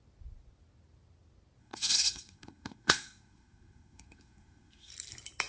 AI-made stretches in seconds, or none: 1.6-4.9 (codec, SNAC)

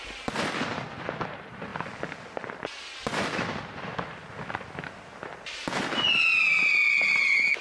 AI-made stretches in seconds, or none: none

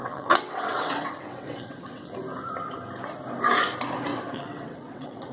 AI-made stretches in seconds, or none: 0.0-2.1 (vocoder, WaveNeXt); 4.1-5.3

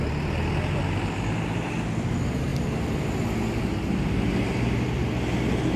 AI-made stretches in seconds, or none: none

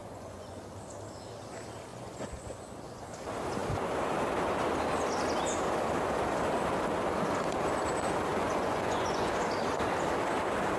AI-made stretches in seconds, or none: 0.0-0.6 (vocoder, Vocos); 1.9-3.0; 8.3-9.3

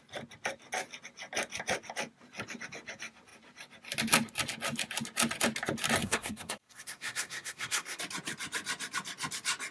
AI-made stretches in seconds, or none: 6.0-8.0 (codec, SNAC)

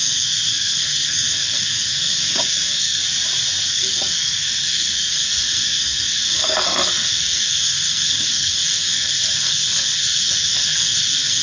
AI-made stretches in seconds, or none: 0.0-3.0 (codec, SNAC); 3.7-11.4

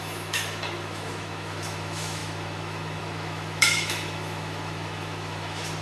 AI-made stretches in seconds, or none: 0.0-5.8 (autoencoder, DAC-VAE)